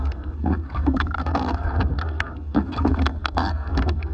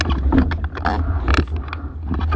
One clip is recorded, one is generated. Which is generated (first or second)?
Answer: first